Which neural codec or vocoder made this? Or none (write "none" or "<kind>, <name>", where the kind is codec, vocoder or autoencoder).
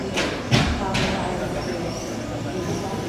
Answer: none